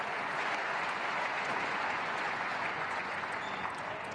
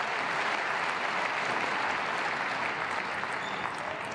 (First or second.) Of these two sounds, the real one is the second